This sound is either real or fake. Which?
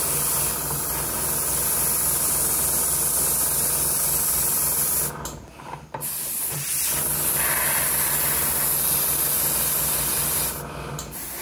real